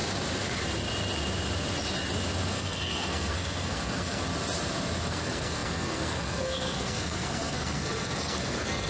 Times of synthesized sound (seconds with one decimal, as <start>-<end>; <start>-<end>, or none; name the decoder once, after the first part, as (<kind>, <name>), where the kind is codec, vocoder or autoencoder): 2.5-4.2 (codec, SNAC); 5.1-8.9